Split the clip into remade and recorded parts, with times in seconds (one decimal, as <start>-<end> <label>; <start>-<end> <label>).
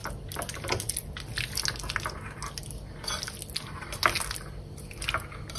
0.0-5.6 recorded